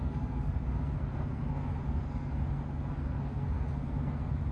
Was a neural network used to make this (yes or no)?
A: yes